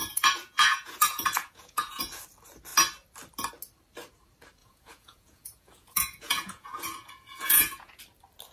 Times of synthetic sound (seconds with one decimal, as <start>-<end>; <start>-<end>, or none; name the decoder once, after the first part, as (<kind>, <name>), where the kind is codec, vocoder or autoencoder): 0.0-2.0 (vocoder, Vocos); 4.6-8.0